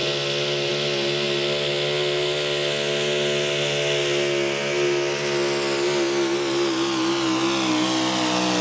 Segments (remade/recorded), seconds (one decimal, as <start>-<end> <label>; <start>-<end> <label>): 0.0-8.6 recorded